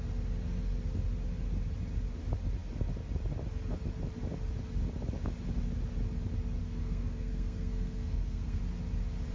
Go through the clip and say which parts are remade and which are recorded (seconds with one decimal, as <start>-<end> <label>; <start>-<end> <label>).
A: 0.0-6.6 recorded; 6.6-8.6 remade; 8.6-9.3 recorded